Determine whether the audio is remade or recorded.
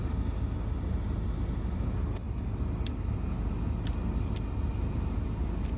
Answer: recorded